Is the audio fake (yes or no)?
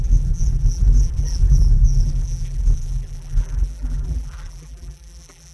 yes